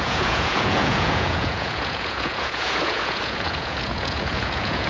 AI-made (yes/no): yes